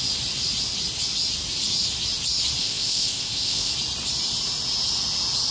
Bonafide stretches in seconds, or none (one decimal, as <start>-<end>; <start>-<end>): 0.0-2.6; 3.7-5.5